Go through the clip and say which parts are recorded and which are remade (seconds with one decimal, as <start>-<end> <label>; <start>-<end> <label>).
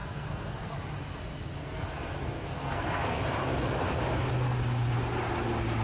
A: 0.0-0.7 remade; 0.7-1.6 recorded; 1.6-3.2 remade; 3.2-5.8 recorded